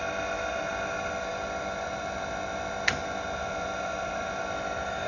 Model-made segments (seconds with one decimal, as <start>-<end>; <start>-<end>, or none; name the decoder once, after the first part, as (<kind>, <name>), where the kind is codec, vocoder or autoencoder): none